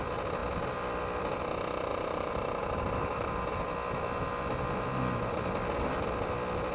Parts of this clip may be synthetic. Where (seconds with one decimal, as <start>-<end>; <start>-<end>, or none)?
1.9-3.6

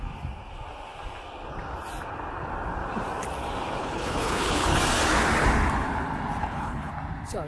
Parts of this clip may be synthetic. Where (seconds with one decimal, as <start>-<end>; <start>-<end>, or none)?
3.8-4.8; 6.4-6.9

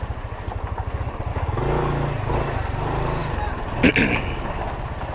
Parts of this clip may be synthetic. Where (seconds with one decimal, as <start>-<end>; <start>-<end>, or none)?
1.3-1.9

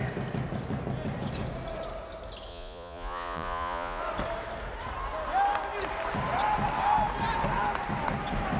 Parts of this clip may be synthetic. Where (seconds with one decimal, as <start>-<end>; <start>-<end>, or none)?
2.5-4.0

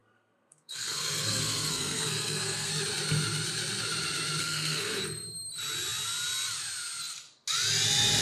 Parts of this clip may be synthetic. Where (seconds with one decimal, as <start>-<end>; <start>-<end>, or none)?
0.0-2.7; 4.4-5.0

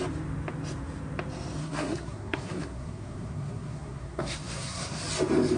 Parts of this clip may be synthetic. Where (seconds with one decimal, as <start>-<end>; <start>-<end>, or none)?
1.6-5.0